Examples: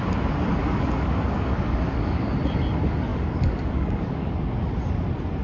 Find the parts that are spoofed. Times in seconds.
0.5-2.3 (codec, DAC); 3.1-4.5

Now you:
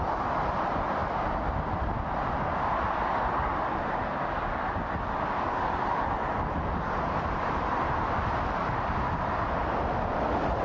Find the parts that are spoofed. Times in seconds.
none

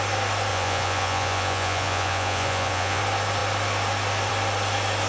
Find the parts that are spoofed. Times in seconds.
0.5-3.0 (vocoder, Vocos)